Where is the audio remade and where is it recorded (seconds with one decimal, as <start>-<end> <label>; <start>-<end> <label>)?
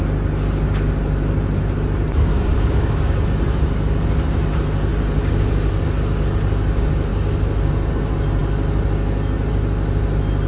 0.0-2.3 recorded; 2.3-3.2 remade; 3.2-10.5 recorded